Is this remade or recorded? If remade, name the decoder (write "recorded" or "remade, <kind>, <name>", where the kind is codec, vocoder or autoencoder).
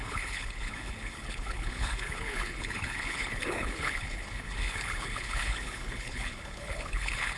remade, codec, HILCodec